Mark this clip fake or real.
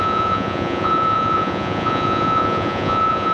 fake